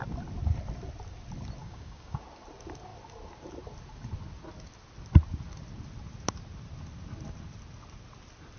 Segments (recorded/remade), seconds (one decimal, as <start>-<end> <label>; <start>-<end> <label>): 0.0-1.6 recorded; 1.6-2.2 remade; 2.2-8.6 recorded